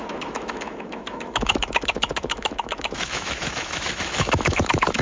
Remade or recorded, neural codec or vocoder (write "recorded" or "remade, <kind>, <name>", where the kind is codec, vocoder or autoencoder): remade, autoencoder, DAC-VAE